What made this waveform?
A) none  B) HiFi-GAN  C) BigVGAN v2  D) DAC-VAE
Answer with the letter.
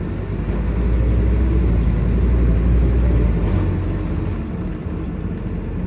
A